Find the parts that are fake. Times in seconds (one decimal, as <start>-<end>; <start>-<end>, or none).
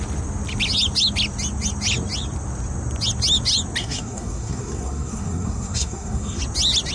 3.8-6.4